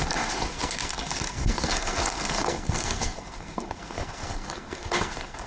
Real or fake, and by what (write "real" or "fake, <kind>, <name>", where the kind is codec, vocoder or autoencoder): fake, codec, SNAC